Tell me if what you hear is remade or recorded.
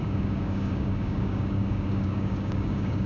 remade